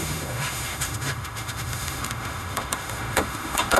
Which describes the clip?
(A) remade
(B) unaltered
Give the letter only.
A